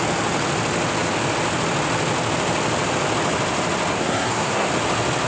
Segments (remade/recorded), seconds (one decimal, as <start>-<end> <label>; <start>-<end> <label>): 0.0-3.9 recorded; 3.9-4.7 remade; 4.7-5.3 recorded